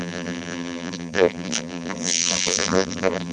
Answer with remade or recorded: remade